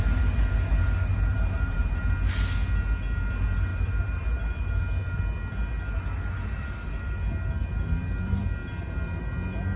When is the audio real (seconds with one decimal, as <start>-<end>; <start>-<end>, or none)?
0.0-1.1; 2.0-3.7; 4.7-9.8